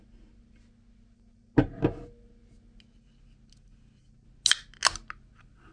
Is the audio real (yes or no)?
yes